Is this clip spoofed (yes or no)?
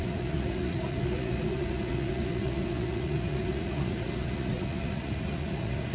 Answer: yes